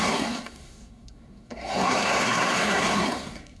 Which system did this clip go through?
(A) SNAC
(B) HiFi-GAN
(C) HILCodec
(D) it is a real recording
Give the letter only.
A